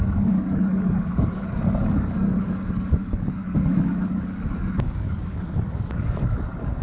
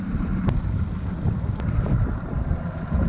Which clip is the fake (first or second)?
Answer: first